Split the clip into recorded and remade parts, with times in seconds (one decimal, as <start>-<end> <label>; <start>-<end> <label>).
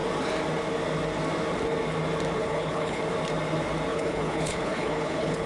0.0-2.4 recorded; 2.4-3.0 remade; 3.0-3.9 recorded; 3.9-5.5 remade